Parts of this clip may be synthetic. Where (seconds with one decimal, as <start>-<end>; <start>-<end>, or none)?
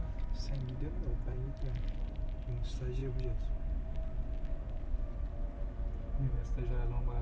1.0-2.3